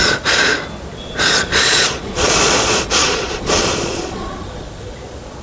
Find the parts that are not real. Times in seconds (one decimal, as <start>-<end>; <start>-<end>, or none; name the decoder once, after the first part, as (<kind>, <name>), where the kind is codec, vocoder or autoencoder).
0.0-0.5 (vocoder, Vocos); 1.0-5.4

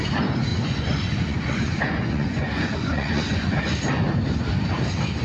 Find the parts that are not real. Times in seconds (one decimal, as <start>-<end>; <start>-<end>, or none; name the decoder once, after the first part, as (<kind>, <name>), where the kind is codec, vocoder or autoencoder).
0.5-3.6 (vocoder, Vocos)

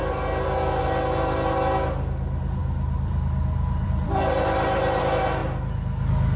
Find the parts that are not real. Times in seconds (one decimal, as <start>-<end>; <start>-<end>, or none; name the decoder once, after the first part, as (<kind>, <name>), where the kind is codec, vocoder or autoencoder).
0.0-0.8 (vocoder, BigVGAN v2); 2.6-5.0